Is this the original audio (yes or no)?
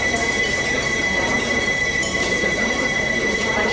no